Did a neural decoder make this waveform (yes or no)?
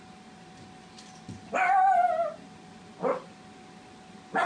no